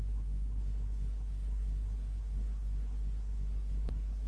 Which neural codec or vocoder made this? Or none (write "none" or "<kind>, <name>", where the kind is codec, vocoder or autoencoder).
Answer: codec, SNAC